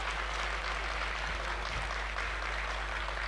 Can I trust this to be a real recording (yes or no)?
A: yes